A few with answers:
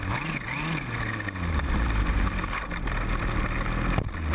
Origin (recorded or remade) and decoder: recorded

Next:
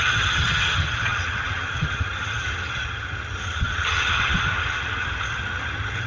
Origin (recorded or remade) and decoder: remade, vocoder, HiFi-GAN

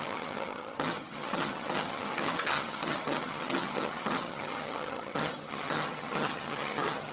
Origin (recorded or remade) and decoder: remade, vocoder, HiFi-GAN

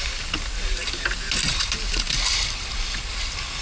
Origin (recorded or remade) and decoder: recorded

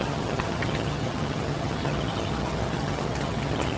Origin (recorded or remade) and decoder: remade, vocoder, HiFi-GAN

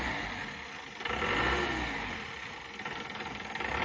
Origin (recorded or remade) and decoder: recorded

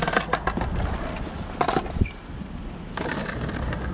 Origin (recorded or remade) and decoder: recorded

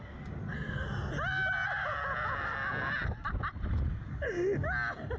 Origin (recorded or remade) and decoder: recorded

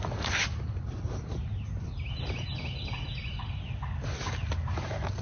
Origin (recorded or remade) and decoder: recorded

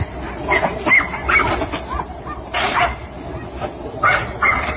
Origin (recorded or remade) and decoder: recorded